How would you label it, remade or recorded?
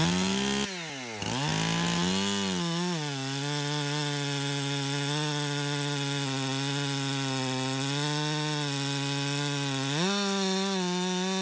recorded